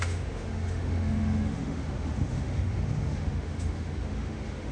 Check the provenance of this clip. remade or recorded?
remade